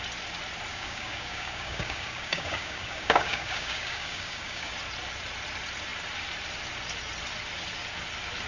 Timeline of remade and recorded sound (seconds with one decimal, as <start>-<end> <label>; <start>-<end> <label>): 0.0-0.7 recorded; 0.7-4.7 remade; 4.7-8.5 recorded